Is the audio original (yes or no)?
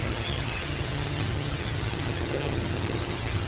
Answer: no